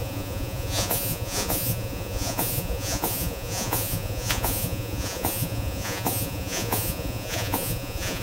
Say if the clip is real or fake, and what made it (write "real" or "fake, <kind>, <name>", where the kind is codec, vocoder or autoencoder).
fake, vocoder, Vocos